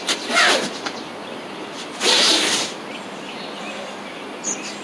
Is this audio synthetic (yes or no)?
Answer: no